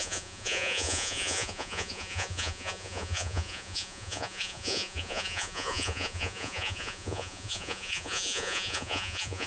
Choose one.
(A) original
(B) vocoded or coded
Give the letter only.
B